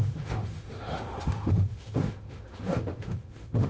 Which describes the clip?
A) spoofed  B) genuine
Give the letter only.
A